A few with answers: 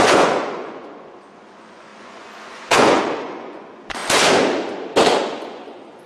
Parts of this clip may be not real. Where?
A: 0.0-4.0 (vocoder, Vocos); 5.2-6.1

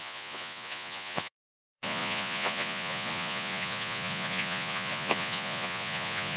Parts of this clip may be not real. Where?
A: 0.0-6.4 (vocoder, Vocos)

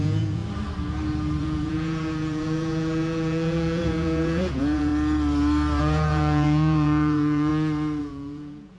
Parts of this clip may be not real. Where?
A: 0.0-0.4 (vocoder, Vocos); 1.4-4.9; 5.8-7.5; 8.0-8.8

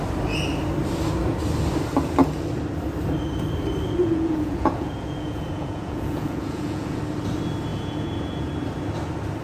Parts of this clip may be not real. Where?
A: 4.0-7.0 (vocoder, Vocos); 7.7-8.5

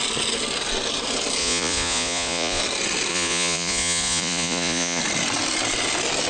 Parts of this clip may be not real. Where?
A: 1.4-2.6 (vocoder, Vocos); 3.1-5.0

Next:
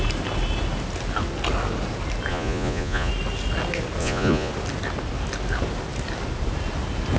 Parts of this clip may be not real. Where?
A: 2.3-3.1 (vocoder, Vocos); 4.0-4.5